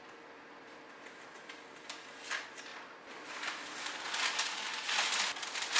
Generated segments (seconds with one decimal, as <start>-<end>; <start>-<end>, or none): none